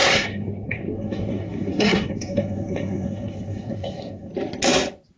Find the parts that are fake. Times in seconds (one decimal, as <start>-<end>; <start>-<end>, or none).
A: 0.0-4.3